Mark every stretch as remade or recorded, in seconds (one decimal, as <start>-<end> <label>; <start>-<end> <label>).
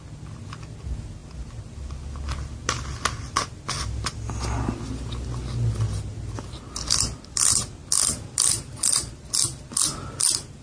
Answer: 0.0-10.6 recorded